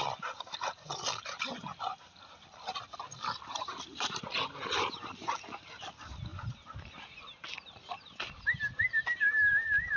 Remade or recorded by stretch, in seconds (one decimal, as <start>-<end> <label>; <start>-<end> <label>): 0.0-6.3 recorded; 6.3-10.0 remade